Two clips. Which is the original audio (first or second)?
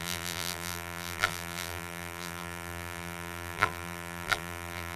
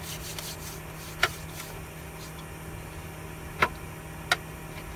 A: second